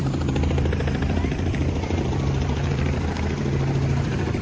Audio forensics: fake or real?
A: fake